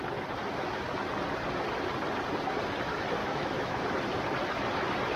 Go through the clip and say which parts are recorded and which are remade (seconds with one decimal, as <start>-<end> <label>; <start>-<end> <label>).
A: 0.0-3.2 recorded; 3.2-3.8 remade; 3.8-5.2 recorded